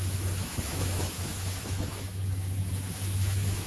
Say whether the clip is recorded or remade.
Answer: remade